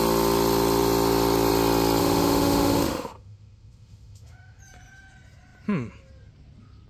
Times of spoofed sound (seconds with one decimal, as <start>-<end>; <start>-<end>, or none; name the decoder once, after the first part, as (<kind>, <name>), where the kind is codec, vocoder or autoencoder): 2.0-4.6 (autoencoder, DAC-VAE)

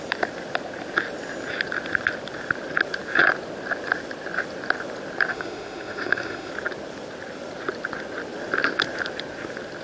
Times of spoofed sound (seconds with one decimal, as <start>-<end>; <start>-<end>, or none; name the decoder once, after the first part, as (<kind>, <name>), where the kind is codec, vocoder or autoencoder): 5.3-6.5 (autoencoder, DAC-VAE)

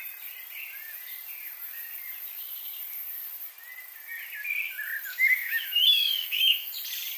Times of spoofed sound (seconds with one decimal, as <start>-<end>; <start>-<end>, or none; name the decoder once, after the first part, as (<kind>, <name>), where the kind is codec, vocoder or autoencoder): 5.1-6.7 (autoencoder, DAC-VAE)

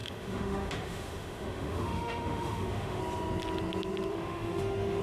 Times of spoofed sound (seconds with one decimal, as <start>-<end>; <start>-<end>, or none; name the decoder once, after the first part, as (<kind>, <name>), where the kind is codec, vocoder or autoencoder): 0.0-3.0 (autoencoder, DAC-VAE); 4.1-5.0

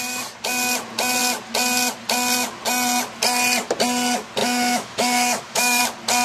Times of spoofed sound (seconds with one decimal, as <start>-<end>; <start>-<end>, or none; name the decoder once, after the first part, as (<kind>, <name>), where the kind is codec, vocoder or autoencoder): 4.4-5.8 (autoencoder, DAC-VAE)

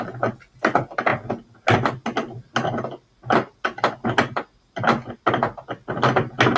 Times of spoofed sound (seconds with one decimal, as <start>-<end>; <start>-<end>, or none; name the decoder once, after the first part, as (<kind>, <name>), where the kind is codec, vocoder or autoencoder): none

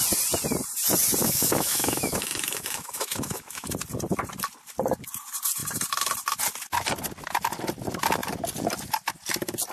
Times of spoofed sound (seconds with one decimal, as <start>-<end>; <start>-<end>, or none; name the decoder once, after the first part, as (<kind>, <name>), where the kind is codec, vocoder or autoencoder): 1.2-3.7 (autoencoder, DAC-VAE)